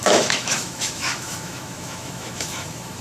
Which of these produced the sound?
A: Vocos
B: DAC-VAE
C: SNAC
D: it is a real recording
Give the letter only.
B